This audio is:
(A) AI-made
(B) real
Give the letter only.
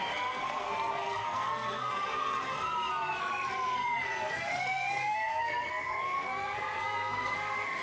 A